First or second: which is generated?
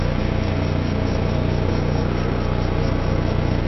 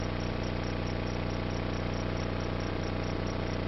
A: first